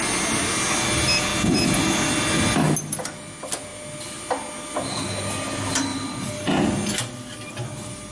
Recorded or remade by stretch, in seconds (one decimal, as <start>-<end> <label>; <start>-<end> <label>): 0.0-8.1 recorded